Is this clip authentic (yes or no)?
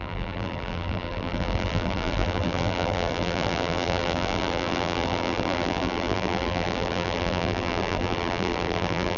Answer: no